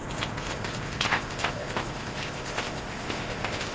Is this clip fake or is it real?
fake